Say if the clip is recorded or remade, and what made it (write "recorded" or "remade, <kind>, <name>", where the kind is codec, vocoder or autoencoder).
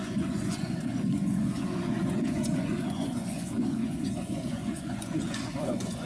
remade, vocoder, Vocos